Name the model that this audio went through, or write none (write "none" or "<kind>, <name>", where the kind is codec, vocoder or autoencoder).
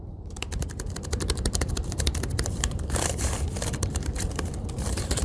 vocoder, BigVGAN v2